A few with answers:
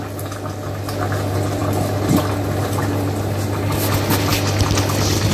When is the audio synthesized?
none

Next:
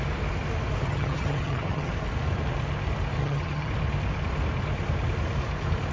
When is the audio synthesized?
0.8-1.9 (vocoder, HiFi-GAN); 3.2-3.7

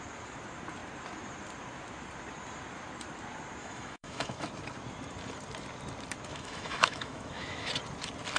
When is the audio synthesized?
3.6-4.5 (autoencoder, DAC-VAE); 6.3-7.7